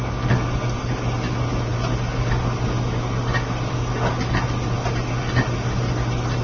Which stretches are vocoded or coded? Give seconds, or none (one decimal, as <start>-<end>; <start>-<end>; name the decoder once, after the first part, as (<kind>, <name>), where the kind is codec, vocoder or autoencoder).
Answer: none